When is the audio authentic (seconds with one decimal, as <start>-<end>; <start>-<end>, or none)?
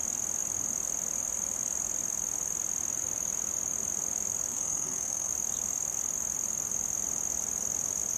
0.0-4.5; 5.3-8.2